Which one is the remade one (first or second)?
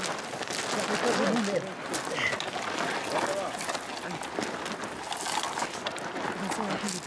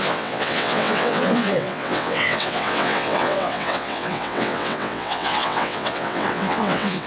second